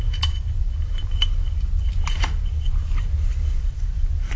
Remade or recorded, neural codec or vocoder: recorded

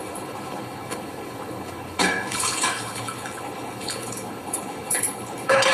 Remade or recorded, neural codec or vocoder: remade, codec, HILCodec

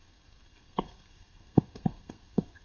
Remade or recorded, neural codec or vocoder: remade, codec, SNAC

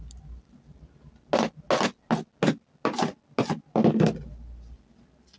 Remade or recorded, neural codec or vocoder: recorded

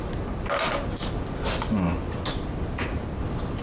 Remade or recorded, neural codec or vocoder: recorded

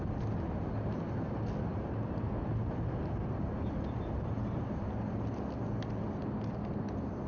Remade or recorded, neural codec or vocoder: recorded